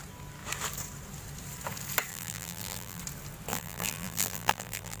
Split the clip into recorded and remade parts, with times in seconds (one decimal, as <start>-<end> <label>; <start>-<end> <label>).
0.0-2.1 recorded; 2.1-3.0 remade; 3.0-3.5 recorded; 3.5-5.0 remade